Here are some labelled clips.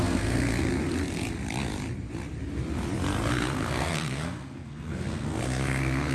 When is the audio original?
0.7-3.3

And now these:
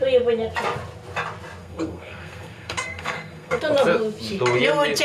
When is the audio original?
0.0-1.6; 3.6-5.0

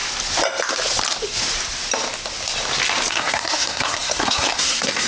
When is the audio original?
0.0-3.1

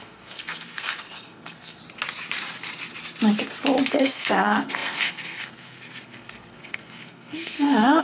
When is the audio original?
1.8-3.9

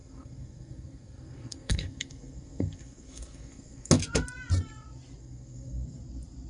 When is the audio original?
3.9-5.2; 6.0-6.5

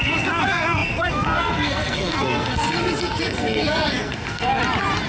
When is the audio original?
4.6-5.1